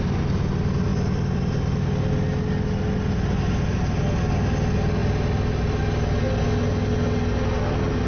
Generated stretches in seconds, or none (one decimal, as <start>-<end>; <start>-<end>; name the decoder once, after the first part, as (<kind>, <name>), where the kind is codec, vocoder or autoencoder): none